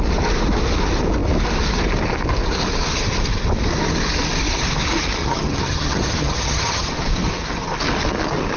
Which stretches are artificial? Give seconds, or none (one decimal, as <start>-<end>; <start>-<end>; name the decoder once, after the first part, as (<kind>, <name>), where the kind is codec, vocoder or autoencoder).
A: 5.2-6.9 (vocoder, HiFi-GAN)